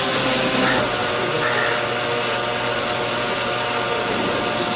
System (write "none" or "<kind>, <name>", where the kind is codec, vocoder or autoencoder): none